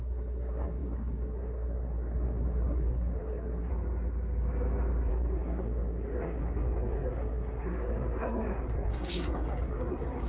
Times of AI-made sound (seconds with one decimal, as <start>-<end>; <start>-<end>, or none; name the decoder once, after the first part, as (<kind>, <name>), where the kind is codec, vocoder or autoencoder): 0.0-3.7 (codec, SNAC); 5.1-10.3